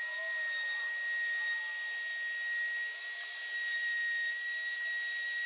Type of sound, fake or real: real